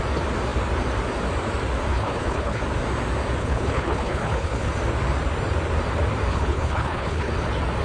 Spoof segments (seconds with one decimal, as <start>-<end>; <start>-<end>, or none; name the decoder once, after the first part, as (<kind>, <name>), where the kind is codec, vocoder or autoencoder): 1.9-2.6 (codec, HILCodec); 3.4-4.7; 6.3-7.3